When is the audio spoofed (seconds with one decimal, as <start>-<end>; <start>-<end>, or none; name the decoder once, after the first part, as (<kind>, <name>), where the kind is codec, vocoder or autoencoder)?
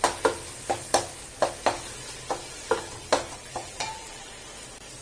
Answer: 3.4-4.3 (vocoder, BigVGAN v2)